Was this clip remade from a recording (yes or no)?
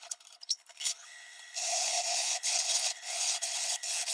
yes